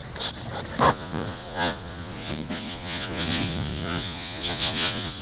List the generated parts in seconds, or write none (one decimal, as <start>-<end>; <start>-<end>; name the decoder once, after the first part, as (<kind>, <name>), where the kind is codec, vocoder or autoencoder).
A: 0.9-5.2 (vocoder, Vocos)